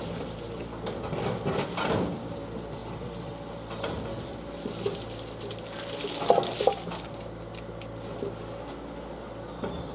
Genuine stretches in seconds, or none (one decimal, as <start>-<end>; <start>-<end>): 0.0-9.9